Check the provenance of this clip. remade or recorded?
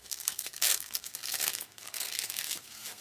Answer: remade